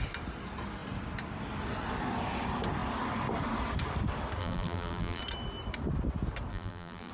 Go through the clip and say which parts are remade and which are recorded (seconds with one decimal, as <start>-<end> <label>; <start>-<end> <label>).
0.0-4.4 recorded; 4.4-5.2 remade; 5.2-6.5 recorded; 6.5-7.1 remade